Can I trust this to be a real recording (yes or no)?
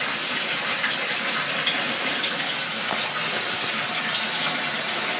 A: yes